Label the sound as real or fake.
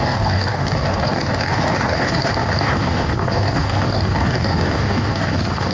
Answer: fake